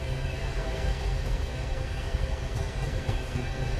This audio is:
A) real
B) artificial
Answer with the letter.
B